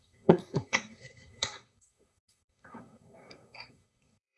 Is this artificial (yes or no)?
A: yes